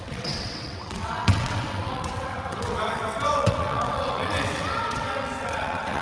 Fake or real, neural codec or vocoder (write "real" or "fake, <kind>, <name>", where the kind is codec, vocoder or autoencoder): fake, vocoder, WaveNeXt